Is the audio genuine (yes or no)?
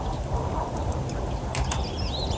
yes